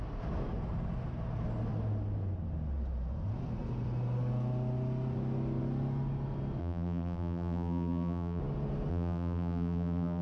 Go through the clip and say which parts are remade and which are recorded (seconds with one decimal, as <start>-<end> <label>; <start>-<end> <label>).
0.0-6.6 recorded; 6.6-8.4 remade; 8.4-8.9 recorded; 8.9-10.2 remade